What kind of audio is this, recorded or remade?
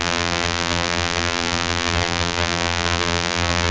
remade